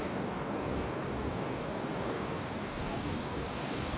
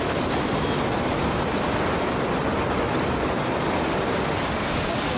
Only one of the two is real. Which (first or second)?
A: second